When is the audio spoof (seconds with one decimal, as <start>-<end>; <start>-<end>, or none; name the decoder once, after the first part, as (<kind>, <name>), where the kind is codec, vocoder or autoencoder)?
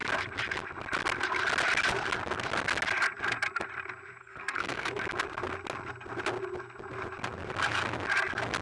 4.2-4.9 (codec, SNAC)